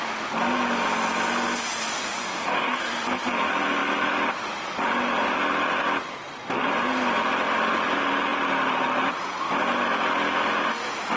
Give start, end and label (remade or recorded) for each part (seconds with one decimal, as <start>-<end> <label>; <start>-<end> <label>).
0.0-2.2 recorded; 2.2-2.9 remade; 2.9-11.2 recorded

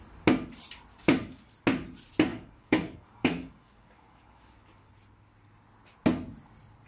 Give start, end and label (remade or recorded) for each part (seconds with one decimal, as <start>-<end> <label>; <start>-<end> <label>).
0.0-0.9 recorded; 0.9-1.4 remade; 1.4-2.3 recorded; 2.3-4.9 remade; 4.9-6.9 recorded

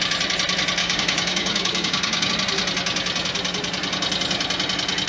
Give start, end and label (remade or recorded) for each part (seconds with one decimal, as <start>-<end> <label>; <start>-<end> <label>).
0.0-0.8 recorded; 0.8-2.3 remade; 2.3-5.1 recorded

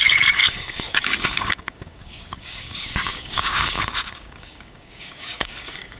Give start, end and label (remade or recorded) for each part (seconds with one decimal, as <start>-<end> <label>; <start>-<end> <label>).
0.0-6.0 remade